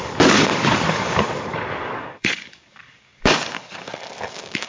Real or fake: fake